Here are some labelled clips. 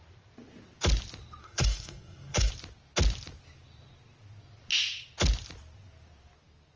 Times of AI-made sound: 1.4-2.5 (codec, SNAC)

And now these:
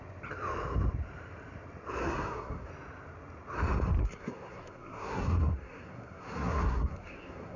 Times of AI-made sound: 2.0-2.7 (codec, SNAC); 4.0-7.6

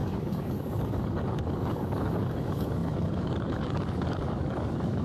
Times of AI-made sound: 0.0-5.0 (codec, DAC)